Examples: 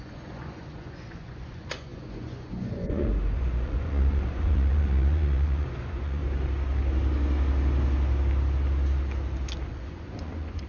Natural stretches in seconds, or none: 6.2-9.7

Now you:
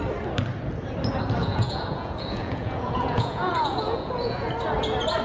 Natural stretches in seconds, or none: 0.0-1.4; 4.5-5.2